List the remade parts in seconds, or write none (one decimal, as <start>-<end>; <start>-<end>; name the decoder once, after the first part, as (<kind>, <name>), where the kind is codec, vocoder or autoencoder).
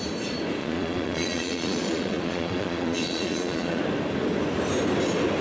0.6-3.8 (vocoder, Vocos)